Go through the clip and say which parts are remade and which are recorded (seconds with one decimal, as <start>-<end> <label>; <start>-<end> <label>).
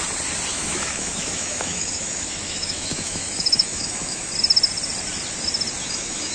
0.0-0.5 recorded; 0.5-4.3 remade; 4.3-5.8 recorded; 5.8-6.3 remade